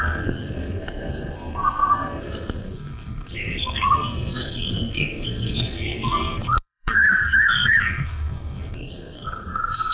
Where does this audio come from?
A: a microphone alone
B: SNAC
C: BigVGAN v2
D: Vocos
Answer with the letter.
B